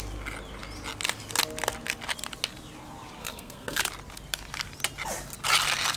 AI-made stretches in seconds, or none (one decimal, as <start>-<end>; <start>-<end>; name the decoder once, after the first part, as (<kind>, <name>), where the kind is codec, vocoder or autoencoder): 3.2-3.8 (codec, SNAC)